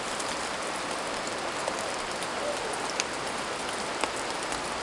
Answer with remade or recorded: recorded